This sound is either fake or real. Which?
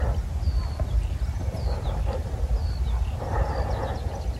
real